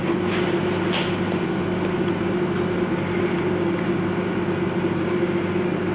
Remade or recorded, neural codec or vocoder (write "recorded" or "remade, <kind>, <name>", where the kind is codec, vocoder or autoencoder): recorded